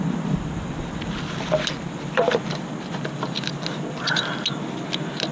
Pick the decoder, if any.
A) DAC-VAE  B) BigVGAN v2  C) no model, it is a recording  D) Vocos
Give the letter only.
C